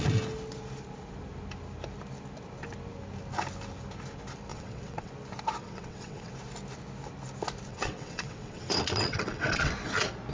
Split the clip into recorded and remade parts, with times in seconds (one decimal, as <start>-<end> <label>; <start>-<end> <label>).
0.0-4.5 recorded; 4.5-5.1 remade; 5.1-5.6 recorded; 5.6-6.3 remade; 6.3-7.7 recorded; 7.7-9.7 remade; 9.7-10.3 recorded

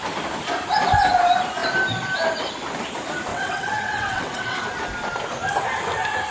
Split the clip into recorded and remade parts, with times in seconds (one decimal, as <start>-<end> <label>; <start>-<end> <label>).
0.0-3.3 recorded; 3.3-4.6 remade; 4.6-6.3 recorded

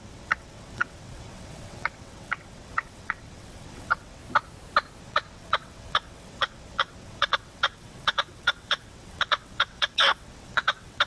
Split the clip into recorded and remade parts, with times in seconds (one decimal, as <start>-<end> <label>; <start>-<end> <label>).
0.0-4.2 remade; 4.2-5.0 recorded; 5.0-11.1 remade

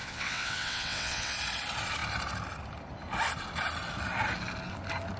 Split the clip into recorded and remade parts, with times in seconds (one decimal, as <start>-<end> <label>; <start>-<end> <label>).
0.0-1.3 remade; 1.3-5.2 recorded

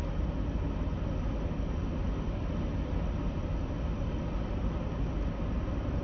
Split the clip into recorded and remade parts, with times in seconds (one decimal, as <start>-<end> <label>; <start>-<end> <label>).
0.0-6.0 recorded

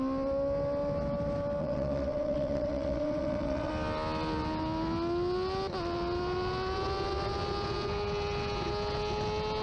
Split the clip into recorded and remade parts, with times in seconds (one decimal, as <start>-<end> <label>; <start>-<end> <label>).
0.0-1.6 recorded; 1.6-3.7 remade; 3.7-9.6 recorded